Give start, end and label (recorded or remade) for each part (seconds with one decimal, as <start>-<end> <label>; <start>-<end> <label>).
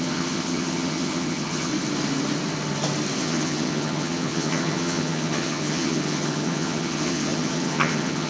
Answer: 0.0-1.7 remade; 1.7-3.2 recorded; 3.2-8.3 remade